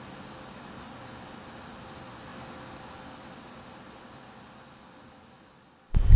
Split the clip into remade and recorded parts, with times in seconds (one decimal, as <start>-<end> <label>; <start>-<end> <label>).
0.0-6.2 recorded